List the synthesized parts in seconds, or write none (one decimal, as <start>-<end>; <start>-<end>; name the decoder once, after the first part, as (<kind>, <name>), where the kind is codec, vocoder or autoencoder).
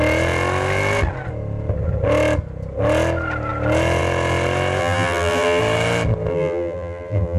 4.8-5.6 (vocoder, BigVGAN v2); 6.3-7.4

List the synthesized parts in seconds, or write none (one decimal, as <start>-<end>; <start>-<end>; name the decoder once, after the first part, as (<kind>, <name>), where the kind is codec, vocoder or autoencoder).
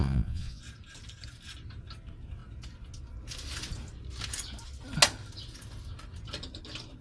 0.0-0.6 (vocoder, Vocos)